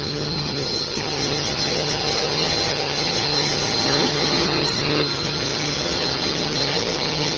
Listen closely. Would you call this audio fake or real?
fake